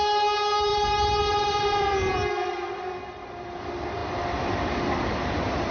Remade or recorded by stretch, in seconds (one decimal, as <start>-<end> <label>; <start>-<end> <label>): 0.0-5.7 recorded